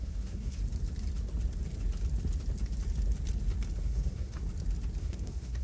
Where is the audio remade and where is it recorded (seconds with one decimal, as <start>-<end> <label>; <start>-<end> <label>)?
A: 0.0-0.6 remade; 0.6-3.8 recorded; 3.8-4.4 remade; 4.4-5.0 recorded; 5.0-5.6 remade